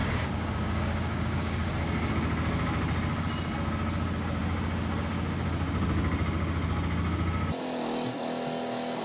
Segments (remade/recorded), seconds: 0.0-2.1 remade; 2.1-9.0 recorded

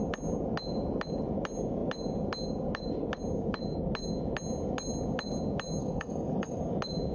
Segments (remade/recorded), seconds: 0.0-5.8 recorded; 5.8-6.6 remade; 6.6-7.1 recorded

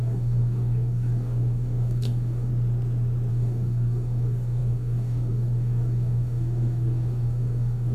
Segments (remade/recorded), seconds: 0.0-2.5 remade; 2.5-3.3 recorded; 3.3-7.9 remade